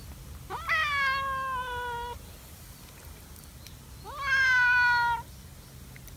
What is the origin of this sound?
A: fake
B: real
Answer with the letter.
B